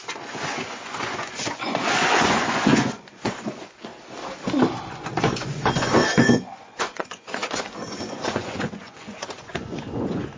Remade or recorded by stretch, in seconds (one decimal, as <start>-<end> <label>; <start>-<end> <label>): 0.0-3.9 remade; 3.9-4.9 recorded; 4.9-10.4 remade